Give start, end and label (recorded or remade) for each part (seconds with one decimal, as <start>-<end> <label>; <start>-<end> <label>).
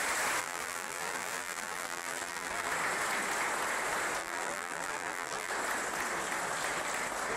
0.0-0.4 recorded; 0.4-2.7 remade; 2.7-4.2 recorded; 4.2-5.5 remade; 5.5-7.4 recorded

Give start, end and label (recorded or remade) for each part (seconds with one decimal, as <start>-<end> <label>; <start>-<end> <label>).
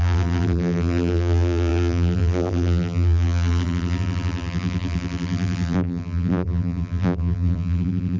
0.0-8.2 remade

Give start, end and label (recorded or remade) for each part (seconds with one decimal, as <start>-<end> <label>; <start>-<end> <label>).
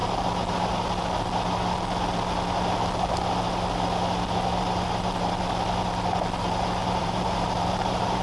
0.0-6.8 recorded; 6.8-8.2 remade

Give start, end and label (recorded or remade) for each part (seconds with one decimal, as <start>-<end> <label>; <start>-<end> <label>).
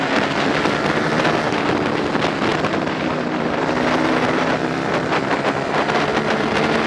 0.0-2.5 recorded; 2.5-6.9 remade